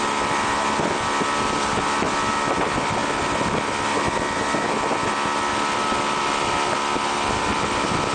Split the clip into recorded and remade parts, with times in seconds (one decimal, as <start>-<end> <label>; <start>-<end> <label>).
0.0-8.1 recorded